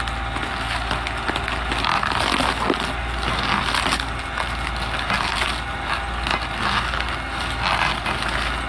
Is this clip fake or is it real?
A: real